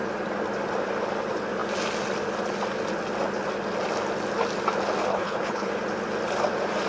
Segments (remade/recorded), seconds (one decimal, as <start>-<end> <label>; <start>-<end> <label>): 0.0-5.1 recorded; 5.1-5.7 remade; 5.7-6.9 recorded